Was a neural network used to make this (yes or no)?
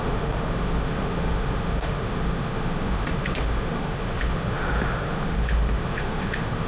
yes